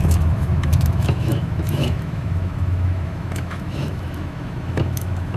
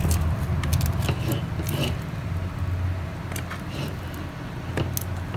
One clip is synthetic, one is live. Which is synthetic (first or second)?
first